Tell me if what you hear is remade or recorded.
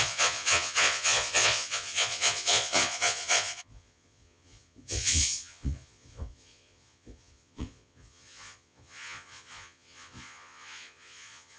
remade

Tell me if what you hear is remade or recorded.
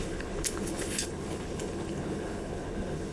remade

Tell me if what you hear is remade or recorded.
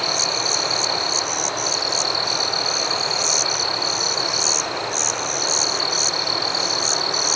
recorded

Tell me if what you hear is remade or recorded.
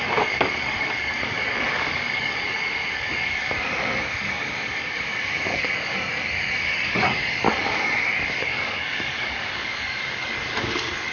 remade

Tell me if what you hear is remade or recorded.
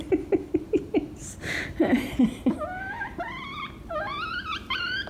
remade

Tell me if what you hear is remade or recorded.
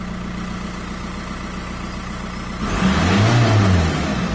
recorded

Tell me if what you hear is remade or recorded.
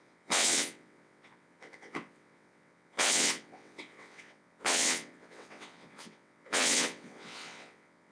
remade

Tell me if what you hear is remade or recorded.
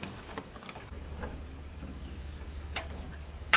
remade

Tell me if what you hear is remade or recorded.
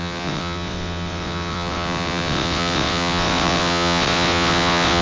remade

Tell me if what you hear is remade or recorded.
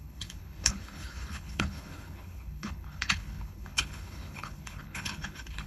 remade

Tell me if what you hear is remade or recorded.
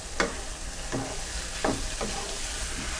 recorded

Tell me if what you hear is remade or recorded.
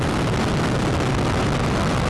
recorded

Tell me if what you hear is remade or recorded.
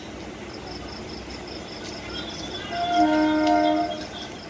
recorded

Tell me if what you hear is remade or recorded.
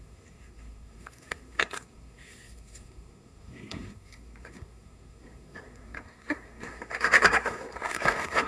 remade